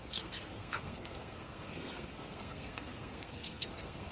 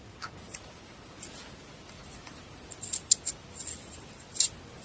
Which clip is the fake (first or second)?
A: first